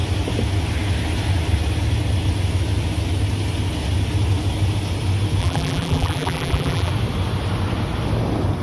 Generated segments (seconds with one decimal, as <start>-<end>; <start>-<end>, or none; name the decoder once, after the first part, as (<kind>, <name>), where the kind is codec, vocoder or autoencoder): 5.4-6.9 (vocoder, BigVGAN v2)